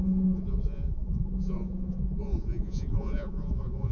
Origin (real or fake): fake